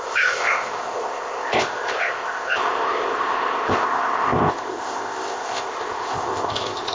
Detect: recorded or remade remade